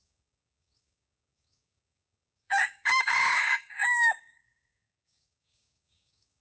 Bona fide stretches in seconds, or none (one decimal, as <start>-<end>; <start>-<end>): none